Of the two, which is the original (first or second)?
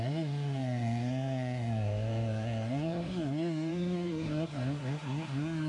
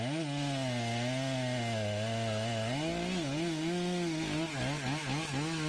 second